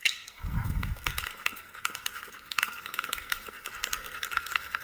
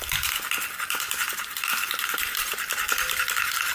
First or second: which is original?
second